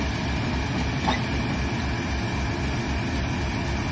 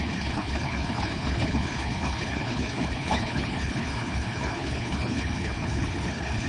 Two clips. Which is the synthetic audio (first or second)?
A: second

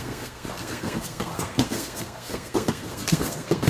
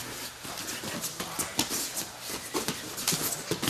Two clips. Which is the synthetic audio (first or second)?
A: first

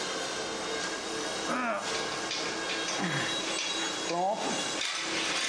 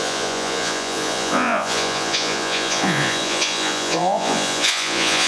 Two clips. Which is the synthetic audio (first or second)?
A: second